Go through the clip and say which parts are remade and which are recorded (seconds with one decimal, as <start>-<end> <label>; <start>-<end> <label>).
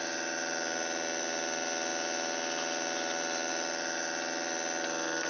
0.0-5.3 recorded